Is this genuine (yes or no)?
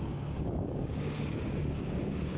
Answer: no